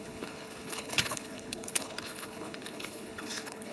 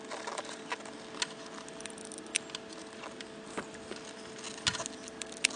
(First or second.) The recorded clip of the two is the second